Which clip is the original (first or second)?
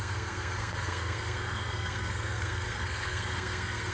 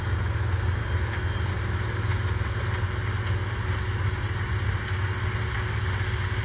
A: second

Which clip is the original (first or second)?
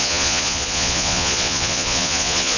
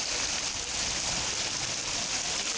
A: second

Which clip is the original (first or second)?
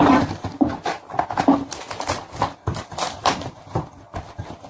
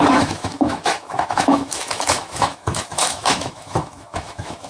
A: first